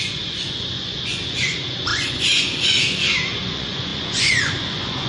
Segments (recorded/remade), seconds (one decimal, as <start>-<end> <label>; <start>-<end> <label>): 0.0-5.1 remade